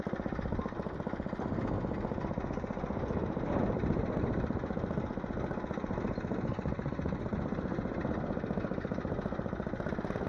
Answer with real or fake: real